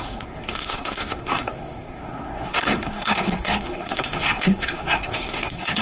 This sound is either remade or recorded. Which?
remade